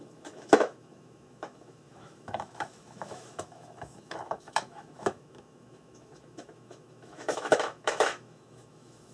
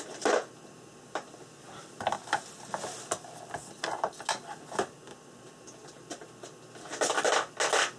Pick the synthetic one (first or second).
first